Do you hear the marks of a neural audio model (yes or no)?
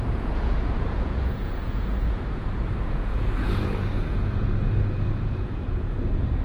yes